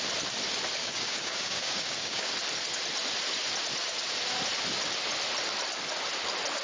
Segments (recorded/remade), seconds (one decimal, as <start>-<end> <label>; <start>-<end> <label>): 0.0-0.8 recorded; 0.8-2.3 remade; 2.3-6.6 recorded